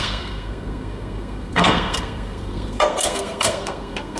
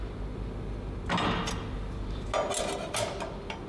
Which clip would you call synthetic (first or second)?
first